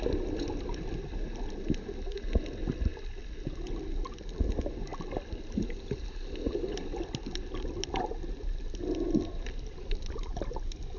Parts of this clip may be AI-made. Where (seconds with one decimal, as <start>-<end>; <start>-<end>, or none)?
none